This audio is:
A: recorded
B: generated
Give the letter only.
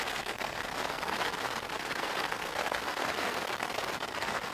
B